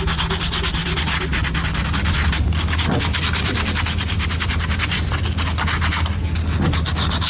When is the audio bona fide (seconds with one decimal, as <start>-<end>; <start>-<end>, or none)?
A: 0.0-0.8; 3.7-7.3